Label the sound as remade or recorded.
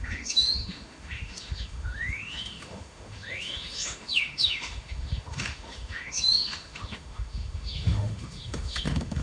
remade